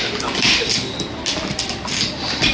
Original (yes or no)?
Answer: yes